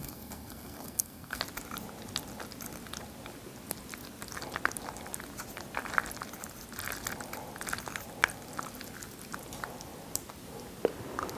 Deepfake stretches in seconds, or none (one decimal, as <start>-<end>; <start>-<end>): 0.0-1.4